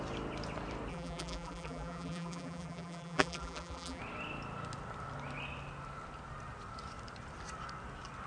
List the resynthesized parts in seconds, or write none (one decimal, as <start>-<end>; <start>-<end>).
0.9-4.0